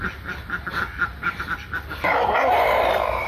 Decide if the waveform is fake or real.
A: real